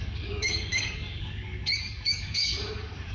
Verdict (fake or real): fake